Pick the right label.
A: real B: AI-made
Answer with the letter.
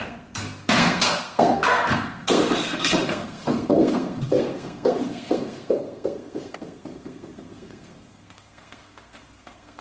B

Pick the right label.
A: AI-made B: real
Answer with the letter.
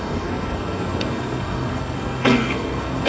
A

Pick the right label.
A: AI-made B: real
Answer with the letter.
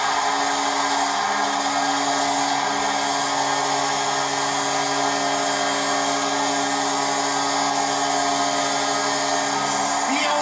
B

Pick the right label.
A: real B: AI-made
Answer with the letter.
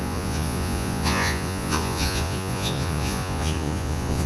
B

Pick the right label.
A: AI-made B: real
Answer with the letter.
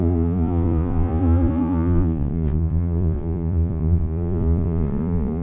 A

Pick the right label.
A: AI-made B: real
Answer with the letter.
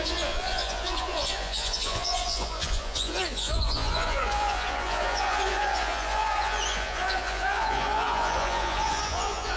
A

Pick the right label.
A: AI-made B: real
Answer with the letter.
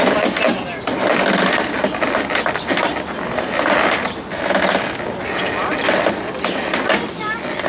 B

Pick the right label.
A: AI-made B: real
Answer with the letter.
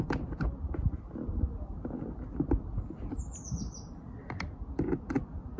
B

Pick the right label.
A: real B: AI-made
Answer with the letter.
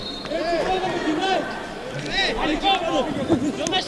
B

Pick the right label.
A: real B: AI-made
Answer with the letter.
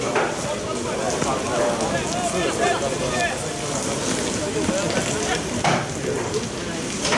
A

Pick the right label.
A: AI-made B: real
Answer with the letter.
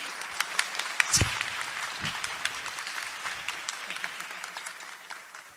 A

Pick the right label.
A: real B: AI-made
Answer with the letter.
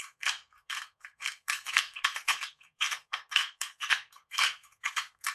B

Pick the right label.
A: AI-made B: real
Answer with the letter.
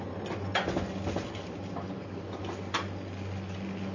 B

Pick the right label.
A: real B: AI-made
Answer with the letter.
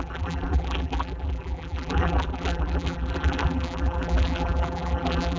B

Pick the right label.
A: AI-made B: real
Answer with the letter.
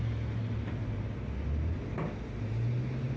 B